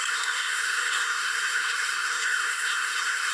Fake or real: fake